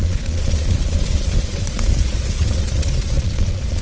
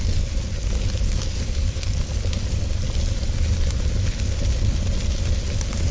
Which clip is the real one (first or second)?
second